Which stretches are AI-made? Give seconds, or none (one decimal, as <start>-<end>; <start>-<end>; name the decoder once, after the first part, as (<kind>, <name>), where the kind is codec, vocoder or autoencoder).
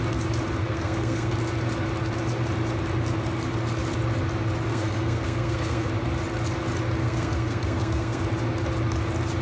0.6-1.3 (codec, SNAC); 4.7-5.9; 7.0-8.2